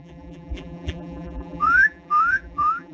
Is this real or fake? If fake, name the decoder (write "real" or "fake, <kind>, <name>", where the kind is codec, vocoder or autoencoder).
fake, vocoder, BigVGAN v2